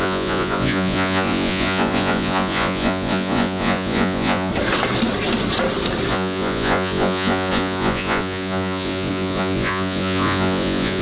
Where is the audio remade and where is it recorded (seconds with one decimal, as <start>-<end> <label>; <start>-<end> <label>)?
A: 0.0-4.5 remade; 4.5-6.1 recorded; 6.1-11.0 remade